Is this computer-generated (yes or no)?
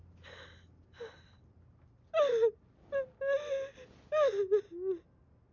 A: no